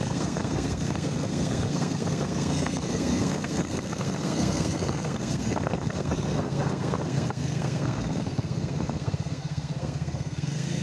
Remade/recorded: remade